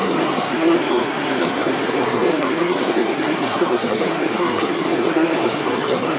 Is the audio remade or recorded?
remade